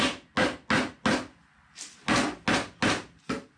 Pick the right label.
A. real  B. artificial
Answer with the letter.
A